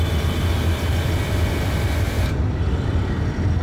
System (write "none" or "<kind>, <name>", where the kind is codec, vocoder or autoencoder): none